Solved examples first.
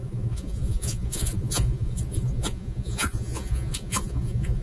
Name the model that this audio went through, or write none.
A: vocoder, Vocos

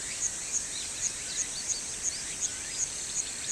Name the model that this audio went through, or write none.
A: none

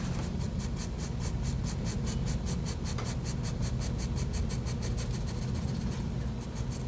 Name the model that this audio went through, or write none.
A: none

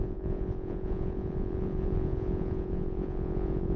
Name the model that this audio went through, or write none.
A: vocoder, Vocos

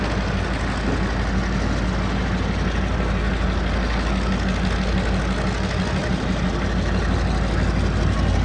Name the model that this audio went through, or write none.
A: none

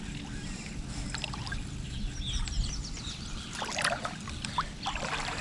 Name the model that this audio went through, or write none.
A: none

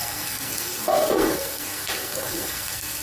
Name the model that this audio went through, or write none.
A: codec, SNAC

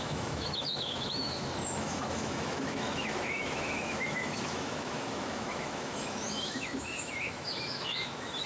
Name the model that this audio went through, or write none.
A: autoencoder, DAC-VAE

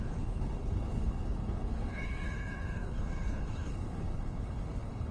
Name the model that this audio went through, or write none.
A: codec, HILCodec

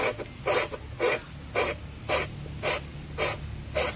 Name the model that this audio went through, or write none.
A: none